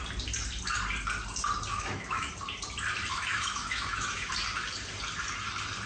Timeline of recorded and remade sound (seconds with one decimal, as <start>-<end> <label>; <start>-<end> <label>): 0.0-1.7 recorded; 1.7-2.3 remade; 2.3-3.1 recorded; 3.1-4.3 remade; 4.3-5.9 recorded